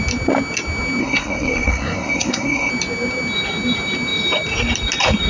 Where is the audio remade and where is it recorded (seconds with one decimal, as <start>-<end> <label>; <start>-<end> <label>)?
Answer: 0.0-1.0 recorded; 1.0-2.7 remade; 2.7-5.3 recorded